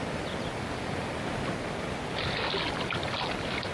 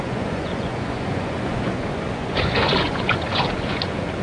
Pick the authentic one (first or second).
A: first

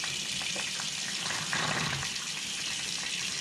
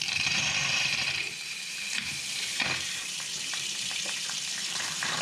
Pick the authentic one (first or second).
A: first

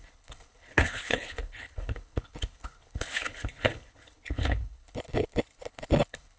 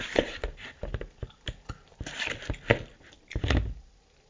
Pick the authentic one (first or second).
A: second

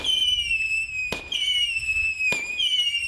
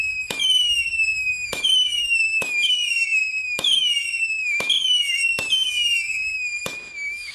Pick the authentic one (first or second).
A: first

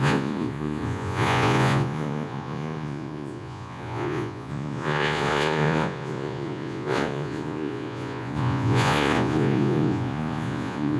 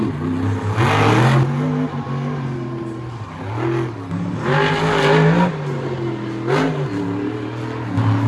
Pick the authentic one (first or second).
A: second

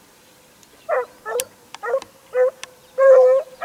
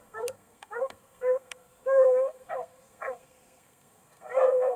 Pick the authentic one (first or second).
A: first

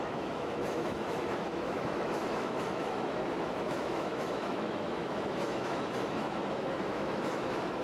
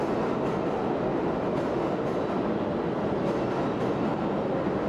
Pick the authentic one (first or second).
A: second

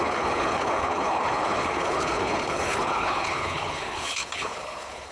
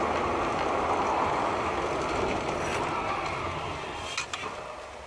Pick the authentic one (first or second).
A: second